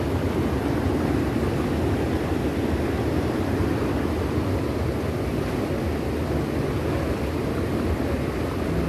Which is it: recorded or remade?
recorded